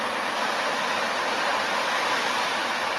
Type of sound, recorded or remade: recorded